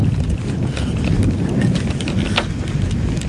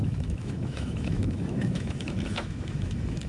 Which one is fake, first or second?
second